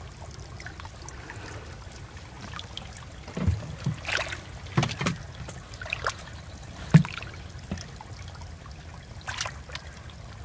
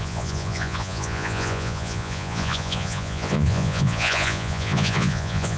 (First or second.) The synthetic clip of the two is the second